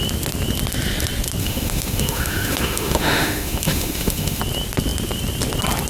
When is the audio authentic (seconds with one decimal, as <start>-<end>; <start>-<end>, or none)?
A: 0.0-1.4; 4.4-5.9